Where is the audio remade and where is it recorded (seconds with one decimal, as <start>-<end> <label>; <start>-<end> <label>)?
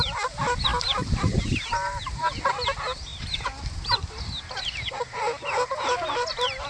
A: 0.0-6.7 recorded